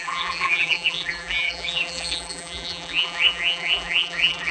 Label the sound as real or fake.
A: fake